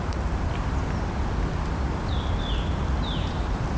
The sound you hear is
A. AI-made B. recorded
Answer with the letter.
B